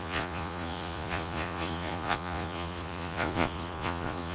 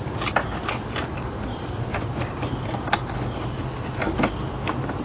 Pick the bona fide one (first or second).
second